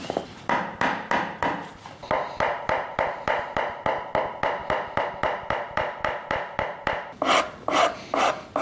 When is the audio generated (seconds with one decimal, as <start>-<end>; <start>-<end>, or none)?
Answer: none